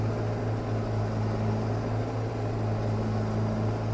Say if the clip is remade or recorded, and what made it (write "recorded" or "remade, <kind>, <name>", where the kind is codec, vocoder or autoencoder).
recorded